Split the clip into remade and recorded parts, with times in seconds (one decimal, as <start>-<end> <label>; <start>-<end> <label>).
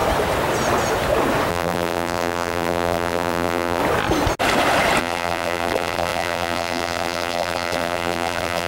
0.0-1.5 recorded; 1.5-3.8 remade; 3.8-5.0 recorded; 5.0-8.7 remade